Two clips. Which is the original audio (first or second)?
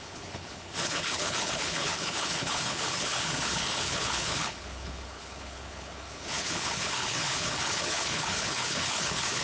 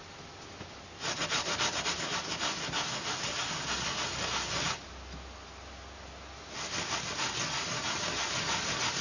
second